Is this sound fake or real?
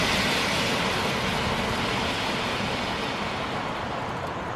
real